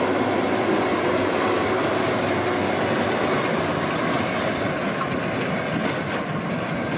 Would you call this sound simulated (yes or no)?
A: no